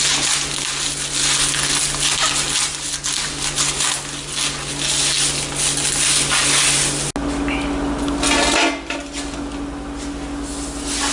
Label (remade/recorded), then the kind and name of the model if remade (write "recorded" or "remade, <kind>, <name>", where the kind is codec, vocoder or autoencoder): recorded